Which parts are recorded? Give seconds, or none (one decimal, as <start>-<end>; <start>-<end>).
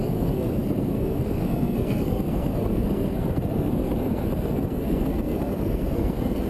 none